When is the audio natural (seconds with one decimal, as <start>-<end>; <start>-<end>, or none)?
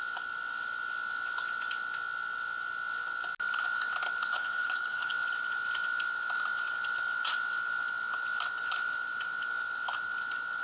0.0-4.3; 5.1-10.6